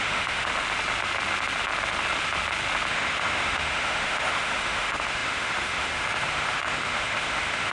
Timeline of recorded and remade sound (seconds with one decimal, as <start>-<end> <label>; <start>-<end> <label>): 0.0-0.5 remade; 0.5-2.9 recorded; 2.9-7.7 remade